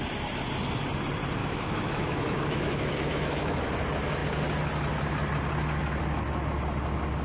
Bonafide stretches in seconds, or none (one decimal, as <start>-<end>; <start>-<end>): 0.0-1.4; 3.6-7.2